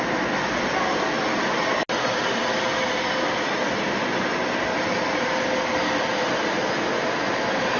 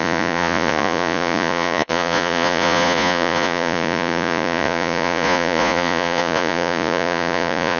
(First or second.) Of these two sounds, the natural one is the first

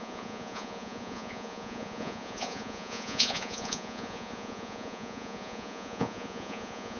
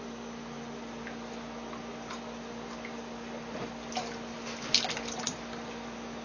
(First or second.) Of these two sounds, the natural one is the second